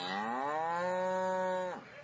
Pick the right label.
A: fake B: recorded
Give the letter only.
B